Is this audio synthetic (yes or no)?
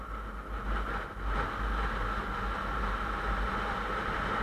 no